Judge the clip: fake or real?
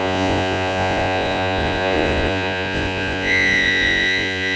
fake